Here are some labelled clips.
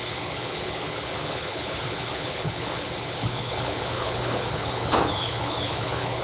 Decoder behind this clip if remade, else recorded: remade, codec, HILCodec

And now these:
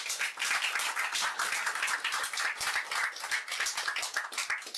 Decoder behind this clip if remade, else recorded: recorded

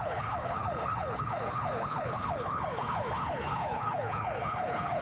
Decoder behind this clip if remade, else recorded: remade, codec, HILCodec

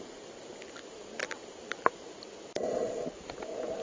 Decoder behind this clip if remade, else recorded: recorded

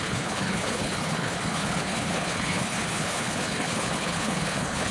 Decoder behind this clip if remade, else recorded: remade, codec, HILCodec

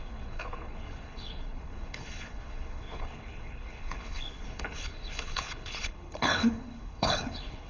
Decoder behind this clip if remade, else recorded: remade, codec, HILCodec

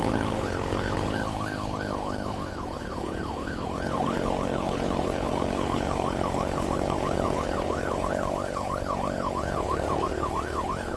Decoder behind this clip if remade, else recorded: remade, codec, HILCodec